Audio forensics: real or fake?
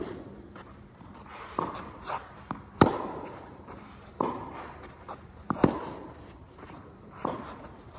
fake